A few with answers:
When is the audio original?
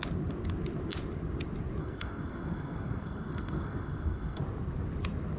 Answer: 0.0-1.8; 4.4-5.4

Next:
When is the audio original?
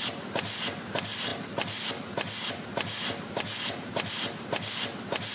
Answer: 0.0-5.3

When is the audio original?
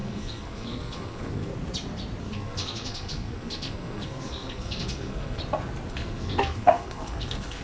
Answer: 1.5-2.2; 5.4-5.9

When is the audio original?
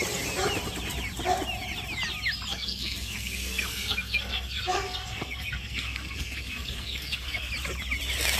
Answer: 0.0-2.5; 7.5-8.4